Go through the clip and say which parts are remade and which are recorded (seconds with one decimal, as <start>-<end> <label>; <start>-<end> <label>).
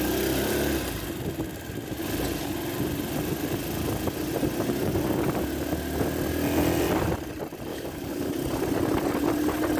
0.0-7.7 recorded; 7.7-8.3 remade; 8.3-9.8 recorded